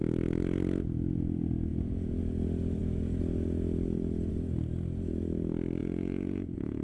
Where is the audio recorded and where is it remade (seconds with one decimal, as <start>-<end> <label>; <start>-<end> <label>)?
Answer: 0.0-1.7 recorded; 1.7-2.2 remade; 2.2-5.8 recorded; 5.8-6.8 remade